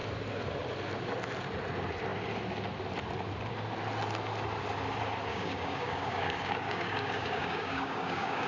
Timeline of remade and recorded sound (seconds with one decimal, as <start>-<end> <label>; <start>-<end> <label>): 0.0-5.3 recorded; 5.3-8.5 remade